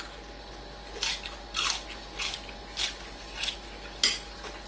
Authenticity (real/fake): real